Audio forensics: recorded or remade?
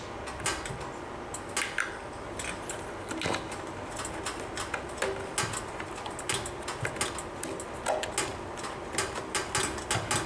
recorded